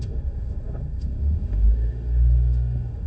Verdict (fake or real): fake